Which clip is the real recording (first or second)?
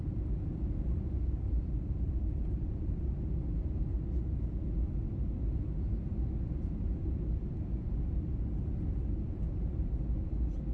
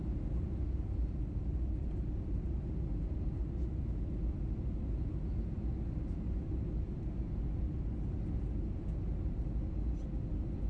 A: second